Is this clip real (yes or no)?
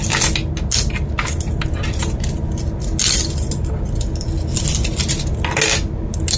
yes